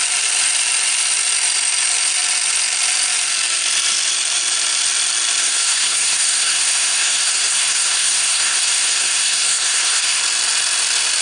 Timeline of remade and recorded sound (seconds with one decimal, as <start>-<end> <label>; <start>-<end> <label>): 0.0-5.4 recorded; 5.4-10.2 remade; 10.2-11.2 recorded

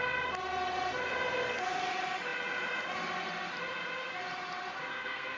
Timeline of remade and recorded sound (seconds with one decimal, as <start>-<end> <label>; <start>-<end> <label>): 0.0-4.9 recorded; 4.9-5.4 remade

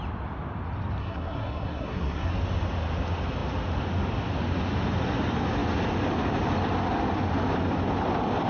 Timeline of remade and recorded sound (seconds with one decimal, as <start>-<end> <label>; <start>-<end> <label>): 0.0-1.0 recorded; 1.0-2.3 remade; 2.3-8.5 recorded

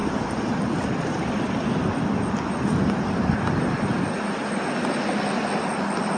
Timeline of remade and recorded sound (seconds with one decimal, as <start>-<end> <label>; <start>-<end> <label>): 0.0-6.2 recorded

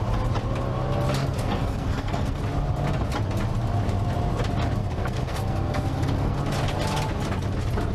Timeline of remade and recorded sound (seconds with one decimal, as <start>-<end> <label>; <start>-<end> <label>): 0.0-1.2 recorded; 1.2-2.4 remade; 2.4-4.8 recorded; 4.8-6.4 remade; 6.4-7.9 recorded